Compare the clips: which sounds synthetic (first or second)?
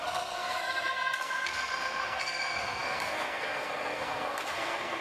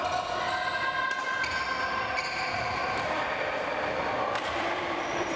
first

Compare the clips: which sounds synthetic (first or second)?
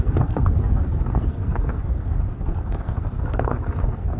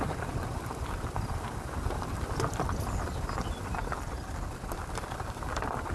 first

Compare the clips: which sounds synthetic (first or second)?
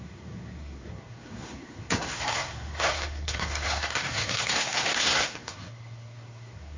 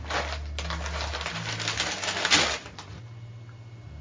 first